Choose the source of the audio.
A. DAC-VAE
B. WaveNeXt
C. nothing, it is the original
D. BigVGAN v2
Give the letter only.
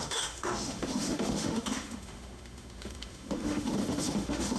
A